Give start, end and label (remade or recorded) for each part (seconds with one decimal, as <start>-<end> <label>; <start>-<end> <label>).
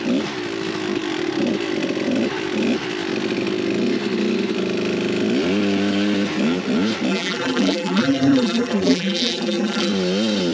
0.0-7.1 recorded; 7.1-9.9 remade; 9.9-10.5 recorded